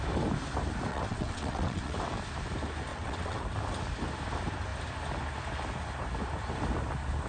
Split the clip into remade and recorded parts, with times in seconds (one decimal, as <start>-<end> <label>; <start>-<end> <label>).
0.0-0.9 recorded; 0.9-2.0 remade; 2.0-2.9 recorded; 2.9-3.4 remade; 3.4-7.3 recorded